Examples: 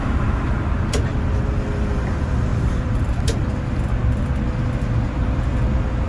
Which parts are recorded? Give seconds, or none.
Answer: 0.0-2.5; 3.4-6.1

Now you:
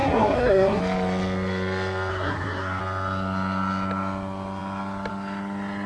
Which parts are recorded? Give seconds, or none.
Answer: 0.8-2.1; 2.8-5.9